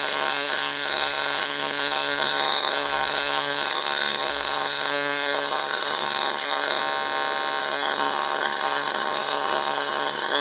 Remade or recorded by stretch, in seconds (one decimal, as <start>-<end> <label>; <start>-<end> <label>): 0.0-6.8 remade; 6.8-7.6 recorded; 7.6-10.4 remade